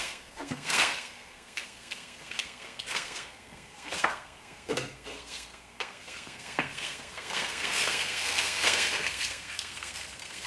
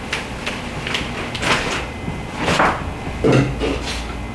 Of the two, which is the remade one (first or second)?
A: first